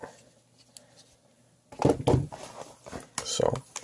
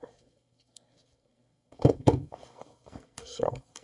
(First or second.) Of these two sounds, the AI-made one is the second